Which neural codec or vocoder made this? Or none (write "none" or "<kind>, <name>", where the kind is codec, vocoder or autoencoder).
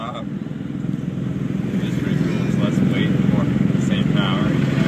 none